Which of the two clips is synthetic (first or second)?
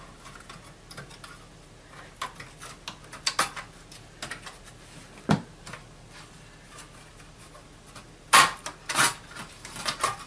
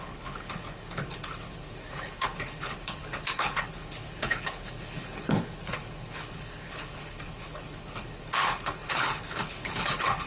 second